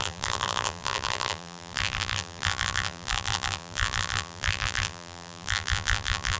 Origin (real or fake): fake